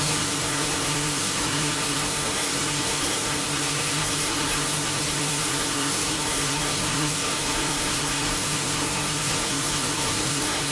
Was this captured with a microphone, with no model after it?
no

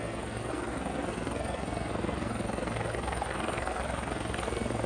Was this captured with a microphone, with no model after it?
no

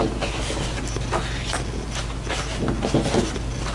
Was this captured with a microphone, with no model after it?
yes